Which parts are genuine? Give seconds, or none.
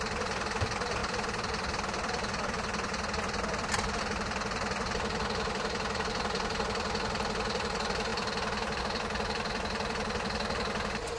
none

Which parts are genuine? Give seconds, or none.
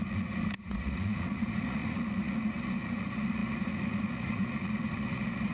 none